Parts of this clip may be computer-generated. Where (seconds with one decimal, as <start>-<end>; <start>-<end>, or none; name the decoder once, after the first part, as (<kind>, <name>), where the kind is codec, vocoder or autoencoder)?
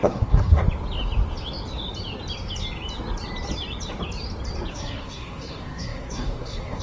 0.0-0.6 (codec, SNAC); 4.7-6.8